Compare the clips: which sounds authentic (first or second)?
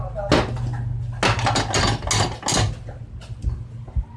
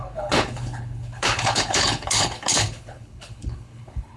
first